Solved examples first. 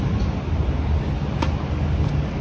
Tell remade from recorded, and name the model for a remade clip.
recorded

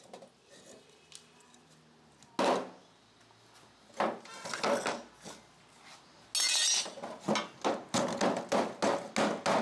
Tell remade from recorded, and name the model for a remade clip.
recorded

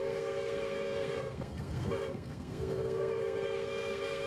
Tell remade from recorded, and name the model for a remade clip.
remade, codec, SNAC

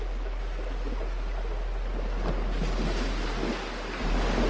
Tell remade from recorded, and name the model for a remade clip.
recorded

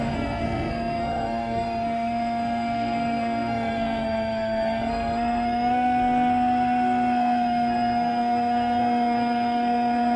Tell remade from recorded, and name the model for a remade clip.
remade, codec, SNAC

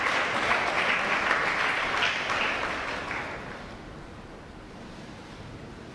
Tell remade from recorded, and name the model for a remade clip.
recorded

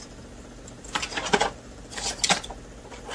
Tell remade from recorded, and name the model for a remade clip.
recorded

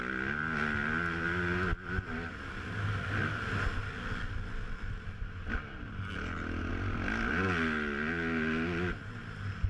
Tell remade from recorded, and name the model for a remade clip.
recorded